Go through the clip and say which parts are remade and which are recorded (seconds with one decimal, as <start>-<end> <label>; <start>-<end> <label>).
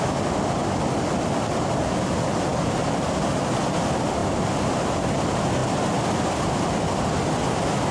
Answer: 0.0-2.5 recorded; 2.5-3.6 remade; 3.6-7.9 recorded